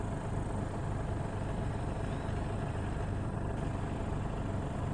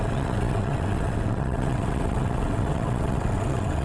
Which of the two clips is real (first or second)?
first